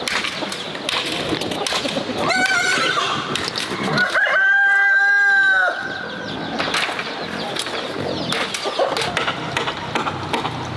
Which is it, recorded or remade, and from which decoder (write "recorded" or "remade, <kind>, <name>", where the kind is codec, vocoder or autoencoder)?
recorded